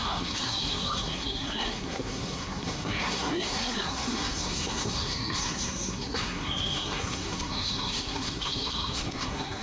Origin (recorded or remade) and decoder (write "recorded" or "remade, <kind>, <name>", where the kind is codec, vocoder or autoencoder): remade, codec, SNAC